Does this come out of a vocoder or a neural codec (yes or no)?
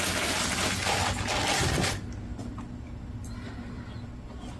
no